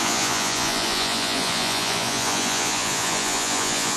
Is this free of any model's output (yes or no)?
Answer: no